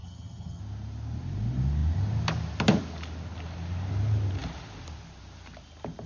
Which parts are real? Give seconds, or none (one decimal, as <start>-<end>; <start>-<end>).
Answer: 0.6-6.1